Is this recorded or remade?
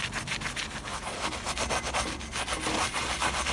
recorded